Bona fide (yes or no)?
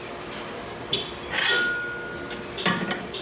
yes